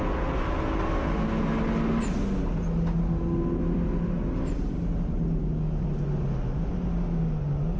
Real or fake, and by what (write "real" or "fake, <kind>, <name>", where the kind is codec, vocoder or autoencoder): real